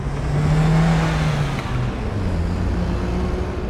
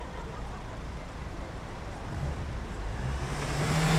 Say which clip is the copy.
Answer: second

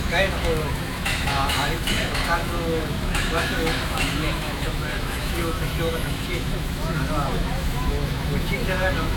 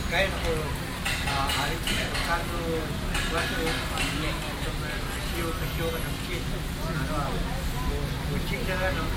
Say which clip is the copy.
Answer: first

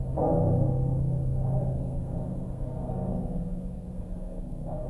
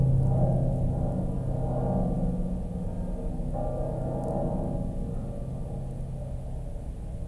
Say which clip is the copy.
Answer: first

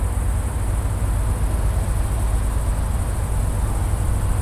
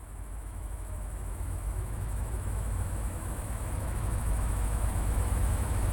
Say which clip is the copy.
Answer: second